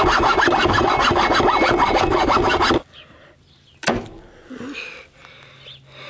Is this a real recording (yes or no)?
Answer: yes